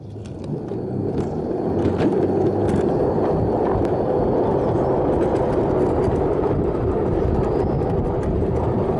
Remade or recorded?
recorded